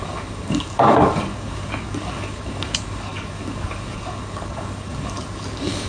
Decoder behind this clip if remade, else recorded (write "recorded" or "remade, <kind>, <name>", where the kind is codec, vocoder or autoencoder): remade, codec, DAC